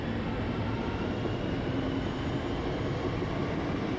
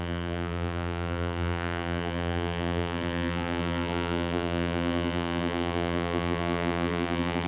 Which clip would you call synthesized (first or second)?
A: second